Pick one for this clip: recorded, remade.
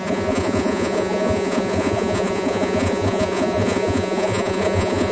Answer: remade